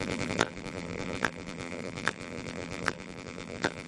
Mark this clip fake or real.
fake